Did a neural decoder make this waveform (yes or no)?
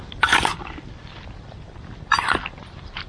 no